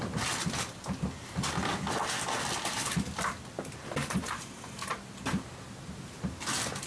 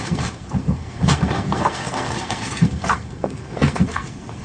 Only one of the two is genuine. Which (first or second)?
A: first